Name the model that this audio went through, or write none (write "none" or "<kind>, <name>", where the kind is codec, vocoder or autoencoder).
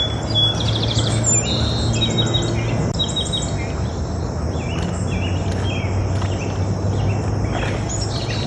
none